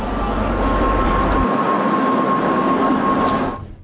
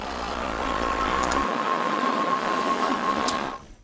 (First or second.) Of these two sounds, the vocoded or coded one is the second